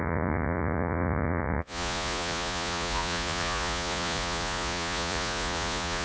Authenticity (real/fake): fake